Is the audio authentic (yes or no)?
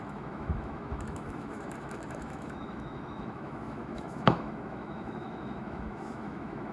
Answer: no